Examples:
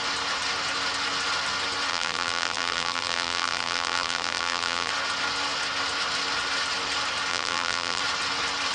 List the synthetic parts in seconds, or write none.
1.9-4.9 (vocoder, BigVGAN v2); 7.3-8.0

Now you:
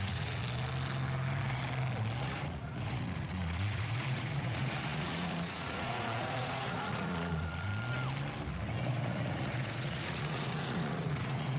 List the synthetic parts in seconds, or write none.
0.0-0.4 (vocoder, Vocos); 2.2-7.7; 8.8-11.6